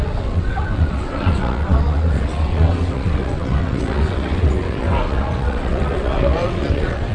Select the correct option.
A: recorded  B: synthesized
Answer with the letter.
B